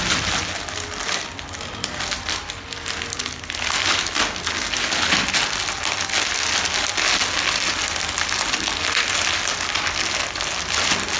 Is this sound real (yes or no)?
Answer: yes